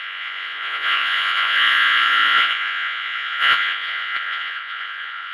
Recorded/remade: remade